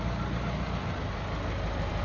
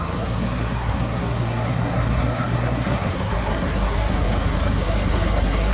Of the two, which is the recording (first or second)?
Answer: first